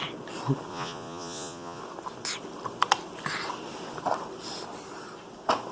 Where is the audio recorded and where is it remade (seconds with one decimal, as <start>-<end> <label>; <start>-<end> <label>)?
0.0-0.7 recorded; 0.7-1.8 remade; 1.8-5.7 recorded